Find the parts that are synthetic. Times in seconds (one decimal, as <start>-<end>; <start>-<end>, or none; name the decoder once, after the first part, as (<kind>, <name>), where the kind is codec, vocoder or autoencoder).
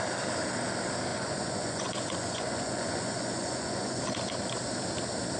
1.1-4.0 (vocoder, Vocos)